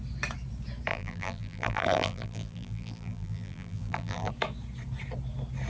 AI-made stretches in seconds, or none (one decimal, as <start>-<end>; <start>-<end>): 0.9-4.3

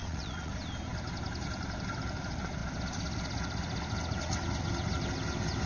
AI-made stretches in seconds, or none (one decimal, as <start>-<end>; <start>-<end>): 0.0-0.5

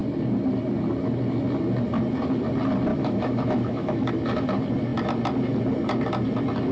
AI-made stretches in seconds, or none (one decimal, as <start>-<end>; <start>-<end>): 2.9-4.1